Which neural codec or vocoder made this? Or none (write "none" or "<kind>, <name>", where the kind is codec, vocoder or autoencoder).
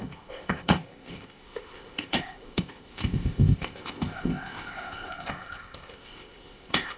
codec, ZipCodec